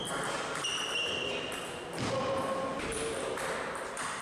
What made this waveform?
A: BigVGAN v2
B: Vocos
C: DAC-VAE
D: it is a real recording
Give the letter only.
D